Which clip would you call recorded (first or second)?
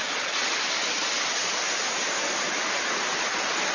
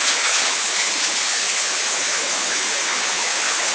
first